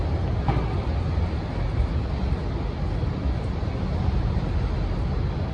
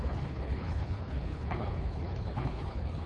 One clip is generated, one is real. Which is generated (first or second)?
second